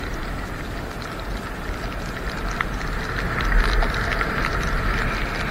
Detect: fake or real real